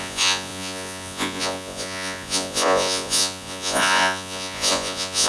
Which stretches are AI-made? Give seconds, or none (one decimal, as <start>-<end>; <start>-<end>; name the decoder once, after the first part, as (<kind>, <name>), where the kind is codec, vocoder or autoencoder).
0.0-5.3 (vocoder, Vocos)